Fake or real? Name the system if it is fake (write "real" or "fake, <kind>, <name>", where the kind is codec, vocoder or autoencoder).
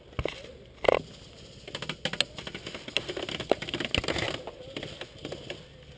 real